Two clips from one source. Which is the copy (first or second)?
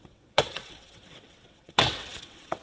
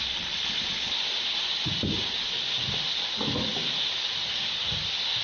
first